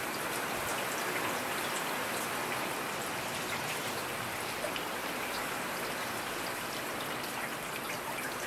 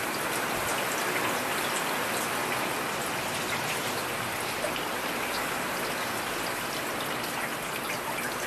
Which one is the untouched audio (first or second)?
second